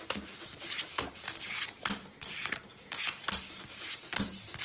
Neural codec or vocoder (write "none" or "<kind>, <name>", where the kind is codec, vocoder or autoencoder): none